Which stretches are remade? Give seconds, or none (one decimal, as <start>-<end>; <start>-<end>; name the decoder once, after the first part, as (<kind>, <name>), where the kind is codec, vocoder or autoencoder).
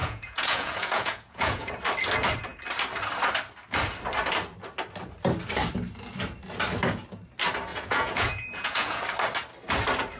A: 0.0-1.7 (vocoder, Vocos); 7.7-9.0